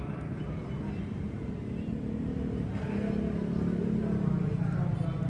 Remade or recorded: recorded